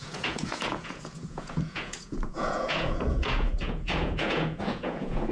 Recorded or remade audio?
remade